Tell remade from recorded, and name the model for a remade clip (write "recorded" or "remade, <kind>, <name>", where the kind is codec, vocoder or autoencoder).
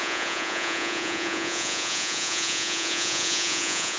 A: remade, vocoder, Vocos